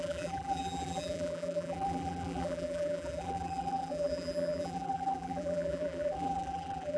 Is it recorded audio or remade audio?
remade